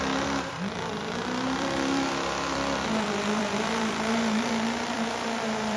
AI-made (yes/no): yes